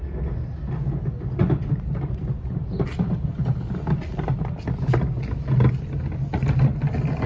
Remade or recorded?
recorded